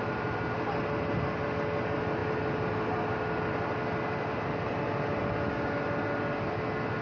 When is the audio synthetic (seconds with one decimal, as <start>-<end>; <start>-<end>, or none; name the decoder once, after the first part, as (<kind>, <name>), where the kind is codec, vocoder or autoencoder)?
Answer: none